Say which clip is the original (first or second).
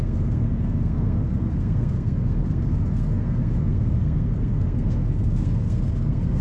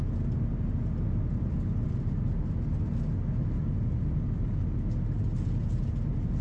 second